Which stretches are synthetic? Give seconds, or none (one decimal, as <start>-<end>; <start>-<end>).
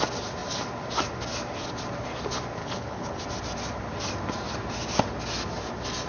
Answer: 2.6-3.2